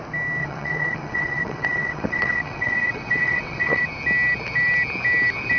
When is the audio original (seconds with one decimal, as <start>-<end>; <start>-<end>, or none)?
0.0-0.4; 3.8-5.6